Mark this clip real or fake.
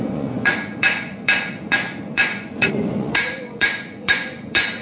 fake